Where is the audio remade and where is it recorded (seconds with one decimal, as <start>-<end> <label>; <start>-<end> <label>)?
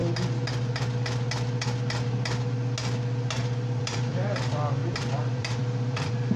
0.0-3.8 recorded; 3.8-6.4 remade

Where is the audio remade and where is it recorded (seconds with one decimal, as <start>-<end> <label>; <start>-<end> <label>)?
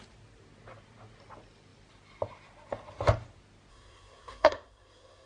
0.0-3.7 recorded; 3.7-5.3 remade